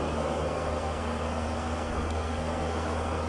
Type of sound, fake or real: fake